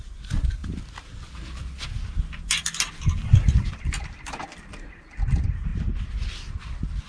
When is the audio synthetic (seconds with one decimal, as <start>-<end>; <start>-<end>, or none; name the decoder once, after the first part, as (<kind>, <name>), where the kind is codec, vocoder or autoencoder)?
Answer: none